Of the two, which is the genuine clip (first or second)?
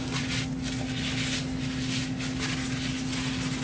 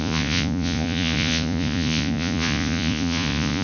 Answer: first